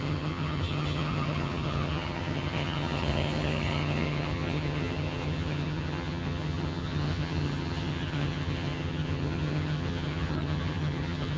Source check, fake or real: fake